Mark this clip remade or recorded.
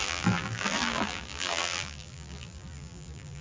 remade